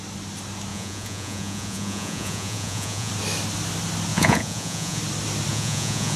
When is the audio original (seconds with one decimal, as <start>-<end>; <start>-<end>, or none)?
0.0-0.7; 3.1-4.1; 5.0-5.5